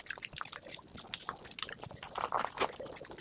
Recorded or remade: recorded